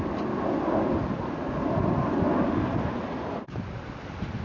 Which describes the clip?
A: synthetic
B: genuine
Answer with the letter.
B